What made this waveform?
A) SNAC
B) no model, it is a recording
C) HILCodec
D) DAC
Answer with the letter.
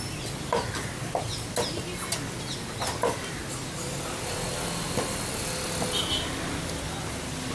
B